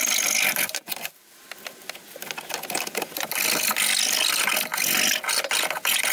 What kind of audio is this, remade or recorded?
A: recorded